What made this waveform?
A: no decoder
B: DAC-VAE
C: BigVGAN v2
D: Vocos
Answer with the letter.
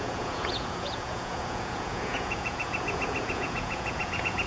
D